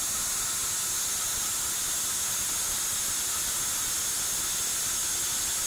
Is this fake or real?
real